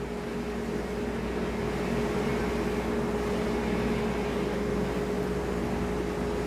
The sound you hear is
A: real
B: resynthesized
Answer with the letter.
A